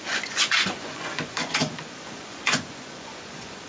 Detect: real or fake fake